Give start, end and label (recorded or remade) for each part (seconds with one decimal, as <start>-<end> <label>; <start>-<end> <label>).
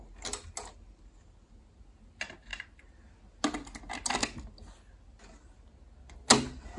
0.0-6.8 recorded